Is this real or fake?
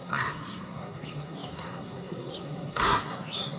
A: fake